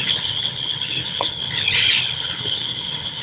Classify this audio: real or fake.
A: fake